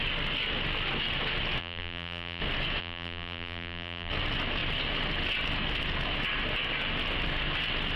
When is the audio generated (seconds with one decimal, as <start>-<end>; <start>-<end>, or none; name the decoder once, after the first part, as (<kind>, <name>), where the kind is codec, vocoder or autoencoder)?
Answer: 1.6-2.4 (vocoder, BigVGAN v2); 2.8-4.1

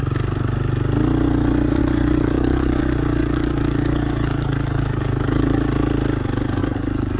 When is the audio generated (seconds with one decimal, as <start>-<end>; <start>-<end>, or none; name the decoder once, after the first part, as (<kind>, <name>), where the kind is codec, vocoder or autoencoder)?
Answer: 1.8-2.8 (codec, DAC); 3.2-5.6; 6.6-7.2

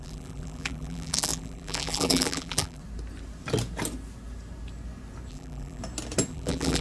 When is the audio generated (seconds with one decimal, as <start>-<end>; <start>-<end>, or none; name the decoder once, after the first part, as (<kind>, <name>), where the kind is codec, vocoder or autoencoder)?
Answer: 0.0-2.8 (vocoder, BigVGAN v2); 5.3-5.8; 6.3-6.8

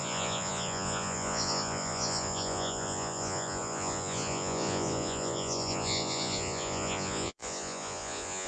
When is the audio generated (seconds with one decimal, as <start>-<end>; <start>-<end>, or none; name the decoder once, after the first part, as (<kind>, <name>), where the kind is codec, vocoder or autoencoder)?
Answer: 0.0-8.5 (vocoder, Vocos)

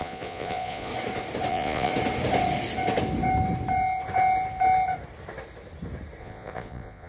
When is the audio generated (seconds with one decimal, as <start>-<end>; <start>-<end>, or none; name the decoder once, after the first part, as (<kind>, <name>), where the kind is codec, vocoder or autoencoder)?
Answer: 0.0-0.9 (vocoder, Vocos); 1.5-1.9; 6.2-7.1

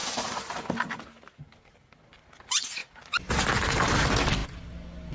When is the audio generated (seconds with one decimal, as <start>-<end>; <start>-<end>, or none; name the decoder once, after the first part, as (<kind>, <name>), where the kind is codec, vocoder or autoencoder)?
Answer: 0.0-0.6 (vocoder, BigVGAN v2)